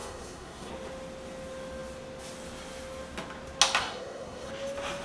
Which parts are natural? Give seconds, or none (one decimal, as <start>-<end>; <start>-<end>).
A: 0.7-3.8; 4.5-5.0